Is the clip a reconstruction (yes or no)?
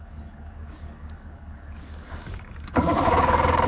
yes